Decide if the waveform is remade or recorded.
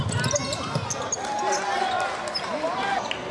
recorded